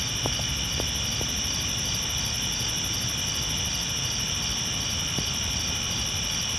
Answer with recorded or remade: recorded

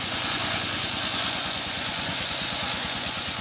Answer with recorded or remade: remade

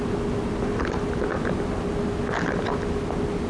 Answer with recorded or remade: recorded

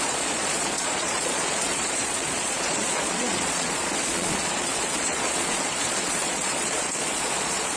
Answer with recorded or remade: remade